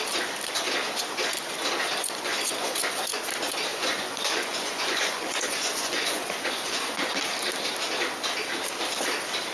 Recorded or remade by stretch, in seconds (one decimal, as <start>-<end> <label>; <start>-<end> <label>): 0.0-2.0 recorded; 2.0-3.2 remade; 3.2-3.7 recorded; 3.7-7.0 remade; 7.0-9.5 recorded

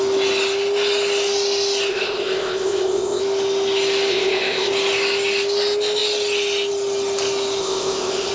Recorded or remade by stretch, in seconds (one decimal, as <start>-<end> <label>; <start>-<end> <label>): 0.0-1.9 recorded; 1.9-3.2 remade; 3.2-4.1 recorded; 4.1-4.7 remade; 4.7-7.6 recorded; 7.6-8.3 remade

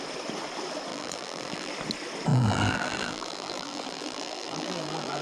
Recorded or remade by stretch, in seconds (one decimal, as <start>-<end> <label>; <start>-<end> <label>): 0.0-0.9 recorded; 0.9-1.7 remade; 1.7-2.3 recorded; 2.3-5.2 remade

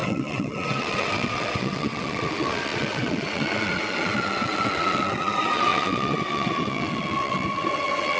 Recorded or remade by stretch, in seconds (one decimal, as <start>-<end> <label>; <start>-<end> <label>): 0.0-8.2 remade

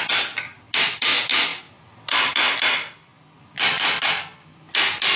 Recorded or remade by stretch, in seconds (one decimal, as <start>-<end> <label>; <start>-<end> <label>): 0.0-5.2 recorded

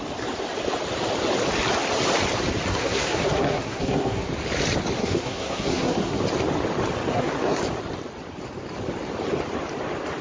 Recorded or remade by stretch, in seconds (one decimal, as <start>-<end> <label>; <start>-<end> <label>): 0.0-2.7 recorded; 2.7-4.3 remade; 4.3-5.0 recorded; 5.0-6.2 remade; 6.2-7.1 recorded; 7.1-7.6 remade; 7.6-10.2 recorded

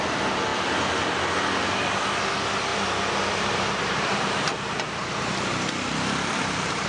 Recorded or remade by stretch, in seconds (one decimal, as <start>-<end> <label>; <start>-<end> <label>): 0.0-2.7 recorded; 2.7-6.9 remade